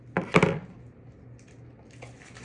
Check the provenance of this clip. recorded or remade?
recorded